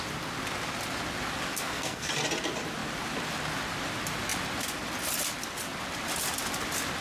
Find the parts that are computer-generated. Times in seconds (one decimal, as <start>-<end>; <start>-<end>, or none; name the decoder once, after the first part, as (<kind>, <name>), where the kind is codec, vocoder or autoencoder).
1.5-2.1 (codec, SNAC)